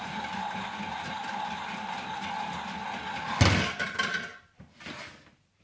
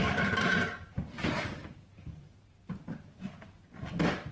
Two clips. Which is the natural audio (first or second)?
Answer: first